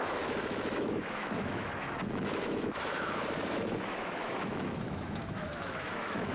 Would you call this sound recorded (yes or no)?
no